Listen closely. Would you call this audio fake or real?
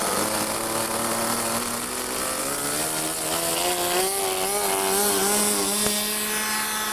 real